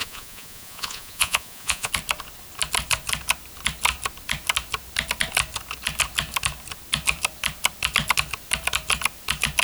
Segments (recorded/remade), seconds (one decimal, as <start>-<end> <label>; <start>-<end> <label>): 0.0-1.9 remade; 1.9-9.6 recorded